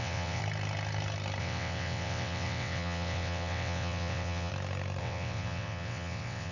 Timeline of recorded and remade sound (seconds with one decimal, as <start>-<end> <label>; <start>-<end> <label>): 0.0-0.4 remade; 0.4-1.4 recorded; 1.4-4.5 remade; 4.5-5.0 recorded; 5.0-6.5 remade